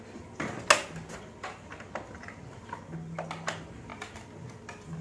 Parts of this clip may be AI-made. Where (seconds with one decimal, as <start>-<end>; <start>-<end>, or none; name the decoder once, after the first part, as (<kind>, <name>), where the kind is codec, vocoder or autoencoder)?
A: none